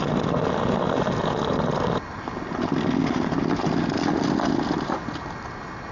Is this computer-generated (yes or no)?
no